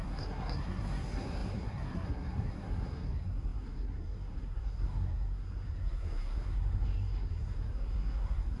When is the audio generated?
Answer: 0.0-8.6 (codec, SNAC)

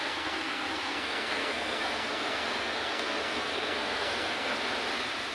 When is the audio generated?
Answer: 0.0-4.5 (codec, SNAC)

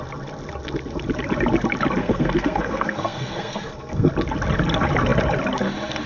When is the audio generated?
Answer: 2.0-4.1 (codec, SNAC)

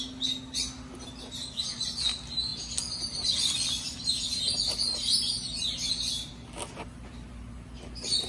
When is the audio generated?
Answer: none

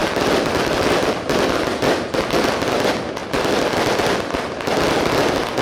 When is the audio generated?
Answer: none

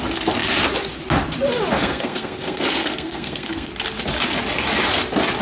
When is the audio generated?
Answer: 1.8-3.7 (codec, SNAC)